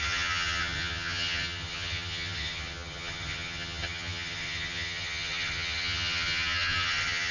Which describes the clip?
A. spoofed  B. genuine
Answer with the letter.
A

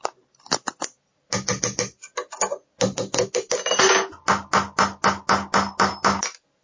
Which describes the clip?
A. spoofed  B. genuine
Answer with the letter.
B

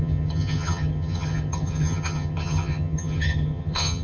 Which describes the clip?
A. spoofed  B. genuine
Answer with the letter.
A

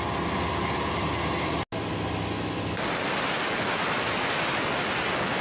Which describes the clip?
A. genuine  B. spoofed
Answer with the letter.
A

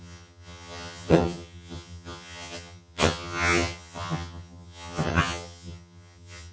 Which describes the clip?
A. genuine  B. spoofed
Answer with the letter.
B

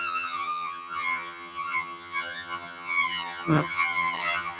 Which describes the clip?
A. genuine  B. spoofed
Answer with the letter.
B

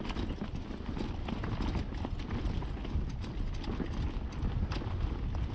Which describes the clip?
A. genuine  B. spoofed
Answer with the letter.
A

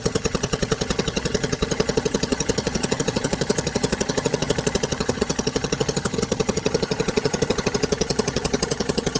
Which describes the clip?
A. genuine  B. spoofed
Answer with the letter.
B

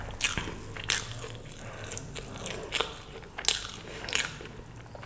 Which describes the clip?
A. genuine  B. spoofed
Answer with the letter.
A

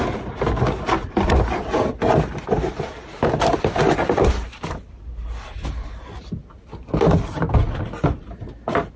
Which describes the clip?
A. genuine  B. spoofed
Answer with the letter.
A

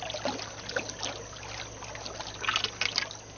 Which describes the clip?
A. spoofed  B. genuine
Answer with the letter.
B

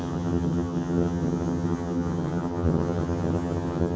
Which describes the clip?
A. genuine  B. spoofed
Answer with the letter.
B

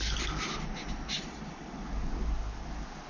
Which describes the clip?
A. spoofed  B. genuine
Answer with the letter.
B